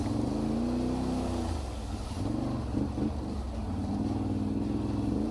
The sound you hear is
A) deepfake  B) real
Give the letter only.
B